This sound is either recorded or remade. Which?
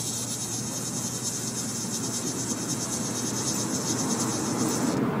recorded